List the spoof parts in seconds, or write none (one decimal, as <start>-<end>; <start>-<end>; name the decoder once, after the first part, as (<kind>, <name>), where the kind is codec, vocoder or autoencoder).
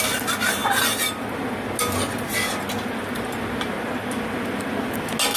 none